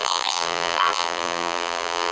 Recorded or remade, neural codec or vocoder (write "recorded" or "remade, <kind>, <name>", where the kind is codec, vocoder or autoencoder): remade, vocoder, BigVGAN v2